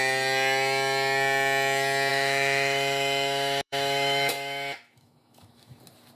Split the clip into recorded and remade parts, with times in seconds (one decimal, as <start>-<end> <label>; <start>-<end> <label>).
0.0-2.1 recorded; 2.1-5.8 remade; 5.8-6.2 recorded